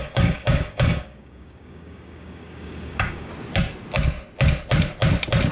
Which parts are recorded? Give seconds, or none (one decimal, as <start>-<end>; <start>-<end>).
3.3-5.5

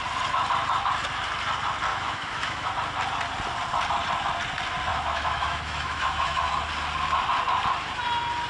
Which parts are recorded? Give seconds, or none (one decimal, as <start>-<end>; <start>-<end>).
0.0-1.9; 2.7-4.9; 6.5-8.5